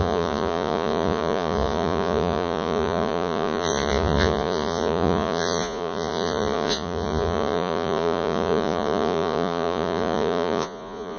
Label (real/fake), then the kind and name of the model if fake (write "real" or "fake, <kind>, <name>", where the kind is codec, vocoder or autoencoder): fake, vocoder, Vocos